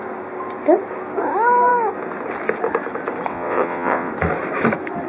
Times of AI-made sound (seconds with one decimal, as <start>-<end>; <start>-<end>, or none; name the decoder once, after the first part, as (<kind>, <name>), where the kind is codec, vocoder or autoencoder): 3.3-4.1 (vocoder, WaveNeXt)